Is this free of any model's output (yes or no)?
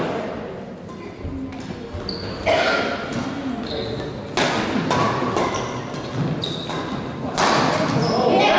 yes